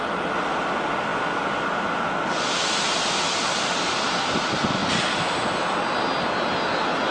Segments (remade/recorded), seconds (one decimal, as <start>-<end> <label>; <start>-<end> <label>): 0.0-7.1 recorded